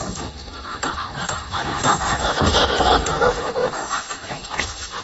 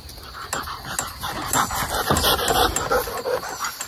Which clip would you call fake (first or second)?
first